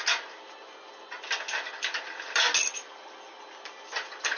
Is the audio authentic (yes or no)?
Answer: yes